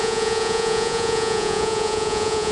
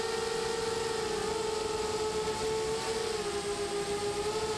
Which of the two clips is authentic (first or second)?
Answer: second